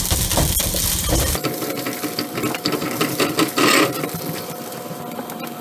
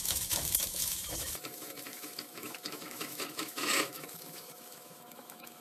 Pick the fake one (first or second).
second